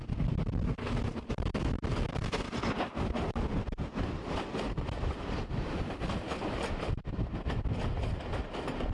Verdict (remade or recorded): recorded